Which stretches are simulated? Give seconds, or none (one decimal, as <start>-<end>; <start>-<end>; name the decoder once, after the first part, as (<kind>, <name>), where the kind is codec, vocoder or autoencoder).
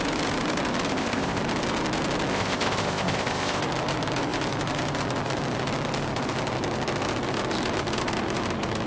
0.9-1.4 (codec, ZipCodec); 2.3-3.6